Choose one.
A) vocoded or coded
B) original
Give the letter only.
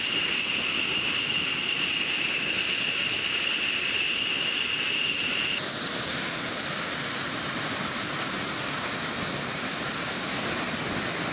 A